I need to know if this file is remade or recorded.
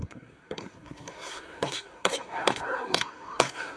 remade